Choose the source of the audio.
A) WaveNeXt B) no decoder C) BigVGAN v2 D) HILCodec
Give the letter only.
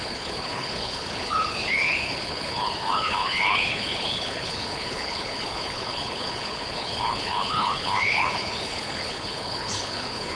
D